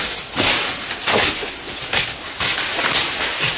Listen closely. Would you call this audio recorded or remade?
recorded